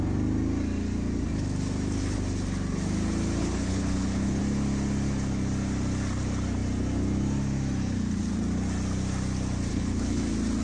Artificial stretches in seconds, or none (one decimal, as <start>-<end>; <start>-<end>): 3.4-4.4; 9.7-10.2